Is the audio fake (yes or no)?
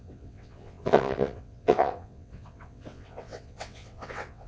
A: yes